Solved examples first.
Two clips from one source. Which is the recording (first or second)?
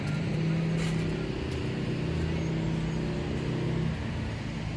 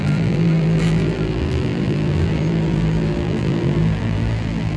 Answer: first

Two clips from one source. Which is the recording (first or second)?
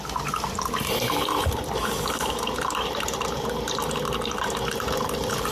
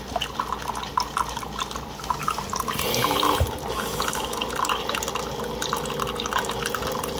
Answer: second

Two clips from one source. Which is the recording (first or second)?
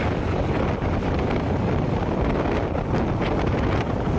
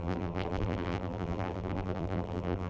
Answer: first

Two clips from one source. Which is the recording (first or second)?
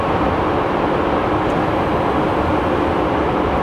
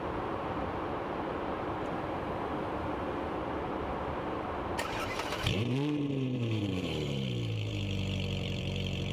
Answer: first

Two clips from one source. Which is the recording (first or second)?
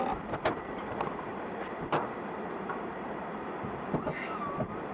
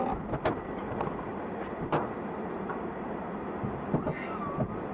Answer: second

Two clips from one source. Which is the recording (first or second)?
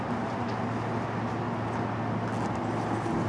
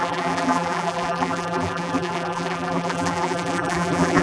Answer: first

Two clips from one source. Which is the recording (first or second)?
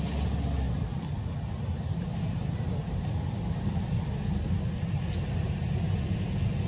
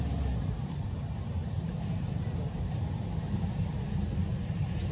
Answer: first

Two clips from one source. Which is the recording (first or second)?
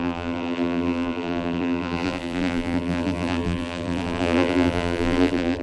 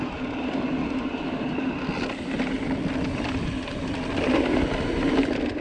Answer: second